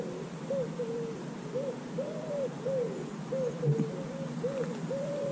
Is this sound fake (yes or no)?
no